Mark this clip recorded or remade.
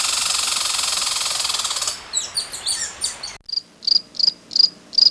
recorded